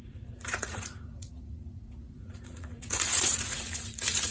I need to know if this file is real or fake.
fake